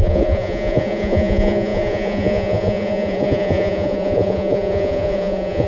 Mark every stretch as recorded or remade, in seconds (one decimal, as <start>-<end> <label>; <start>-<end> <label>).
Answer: 0.0-5.7 remade